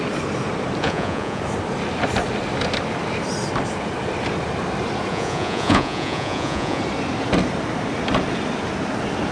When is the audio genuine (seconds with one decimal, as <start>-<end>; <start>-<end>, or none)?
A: 0.0-0.8; 1.4-5.1; 6.8-9.3